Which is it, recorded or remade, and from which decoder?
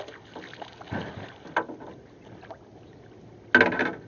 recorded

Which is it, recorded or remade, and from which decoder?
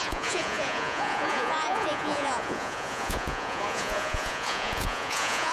remade, vocoder, Vocos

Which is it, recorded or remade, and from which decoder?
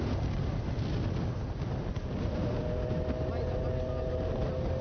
recorded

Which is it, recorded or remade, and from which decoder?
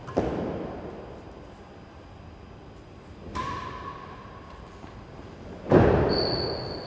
recorded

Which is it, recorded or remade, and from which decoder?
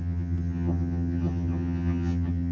remade, vocoder, HiFi-GAN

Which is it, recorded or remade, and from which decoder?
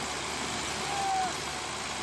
recorded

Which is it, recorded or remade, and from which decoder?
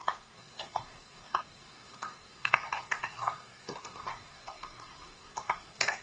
remade, codec, SNAC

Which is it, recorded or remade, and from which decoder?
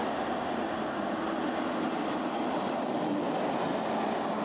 recorded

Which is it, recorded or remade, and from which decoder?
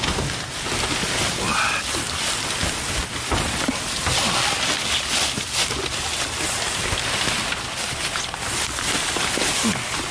recorded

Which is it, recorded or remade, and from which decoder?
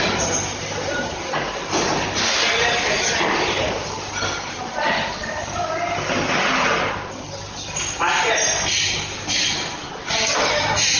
recorded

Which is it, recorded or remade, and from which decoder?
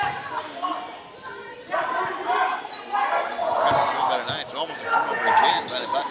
recorded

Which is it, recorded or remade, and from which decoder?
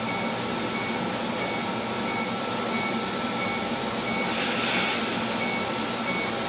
recorded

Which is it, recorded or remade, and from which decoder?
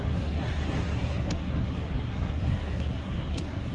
remade, codec, SNAC